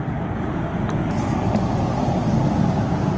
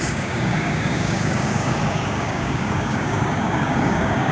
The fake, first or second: second